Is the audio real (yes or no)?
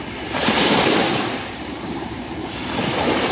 no